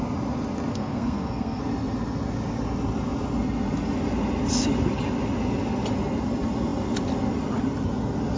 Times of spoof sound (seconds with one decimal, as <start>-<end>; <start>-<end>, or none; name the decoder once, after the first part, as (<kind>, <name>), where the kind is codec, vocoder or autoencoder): 0.7-1.6 (codec, SNAC)